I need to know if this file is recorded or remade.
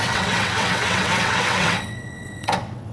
remade